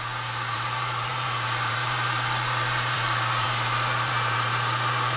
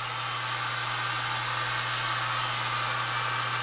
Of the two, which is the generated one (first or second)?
first